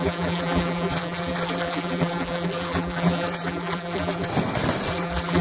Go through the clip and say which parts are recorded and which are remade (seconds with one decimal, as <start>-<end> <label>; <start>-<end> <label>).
0.0-4.3 remade; 4.3-4.9 recorded; 4.9-5.4 remade